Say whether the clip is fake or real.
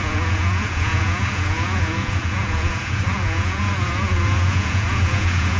fake